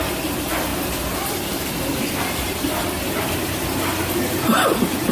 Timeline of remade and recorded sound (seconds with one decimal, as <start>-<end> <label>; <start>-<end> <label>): 0.0-0.7 recorded; 0.7-3.8 remade; 3.8-5.1 recorded

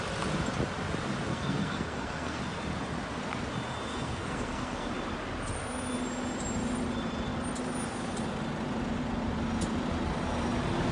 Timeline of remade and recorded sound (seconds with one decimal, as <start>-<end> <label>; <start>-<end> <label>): 0.0-1.3 recorded; 1.3-2.4 remade; 2.4-3.9 recorded; 3.9-4.9 remade; 4.9-10.9 recorded

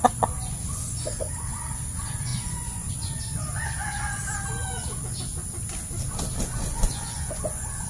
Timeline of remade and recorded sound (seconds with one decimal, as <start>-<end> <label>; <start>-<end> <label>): 0.0-4.2 remade; 4.2-6.4 recorded; 6.4-7.9 remade

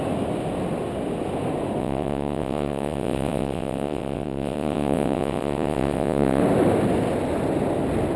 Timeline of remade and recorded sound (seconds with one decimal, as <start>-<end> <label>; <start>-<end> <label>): 0.0-1.8 recorded; 1.8-6.4 remade; 6.4-8.2 recorded

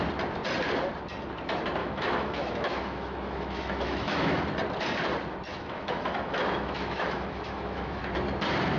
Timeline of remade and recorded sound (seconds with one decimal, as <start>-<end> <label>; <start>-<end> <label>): 0.0-1.8 recorded; 1.8-4.4 remade; 4.4-5.5 recorded; 5.5-8.0 remade; 8.0-8.8 recorded

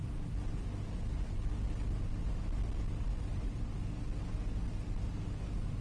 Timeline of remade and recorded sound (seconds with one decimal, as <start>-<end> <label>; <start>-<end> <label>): 0.0-3.3 recorded; 3.3-3.8 remade; 3.8-5.8 recorded

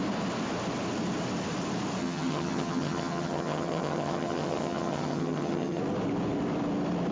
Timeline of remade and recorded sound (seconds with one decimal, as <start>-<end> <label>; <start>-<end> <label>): 0.0-2.0 recorded; 2.0-5.8 remade; 5.8-7.1 recorded

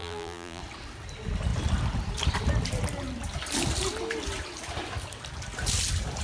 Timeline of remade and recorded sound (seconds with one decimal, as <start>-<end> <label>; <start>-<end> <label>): 0.0-0.6 remade; 0.6-6.2 recorded